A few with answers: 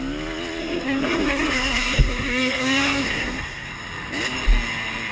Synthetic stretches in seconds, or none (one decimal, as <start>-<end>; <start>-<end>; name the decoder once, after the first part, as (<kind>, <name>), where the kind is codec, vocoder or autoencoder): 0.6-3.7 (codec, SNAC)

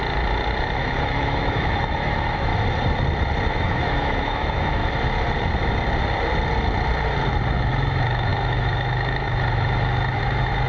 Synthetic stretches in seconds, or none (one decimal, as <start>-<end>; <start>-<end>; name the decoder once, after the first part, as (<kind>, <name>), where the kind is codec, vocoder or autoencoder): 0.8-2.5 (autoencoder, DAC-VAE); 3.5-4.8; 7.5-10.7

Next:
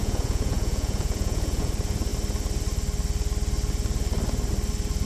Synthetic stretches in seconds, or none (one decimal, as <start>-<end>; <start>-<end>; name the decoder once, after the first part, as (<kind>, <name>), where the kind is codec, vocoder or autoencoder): 0.0-1.7 (vocoder, Vocos)